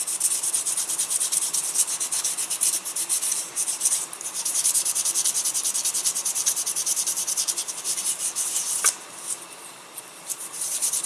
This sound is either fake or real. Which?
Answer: fake